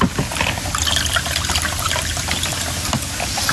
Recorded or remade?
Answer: recorded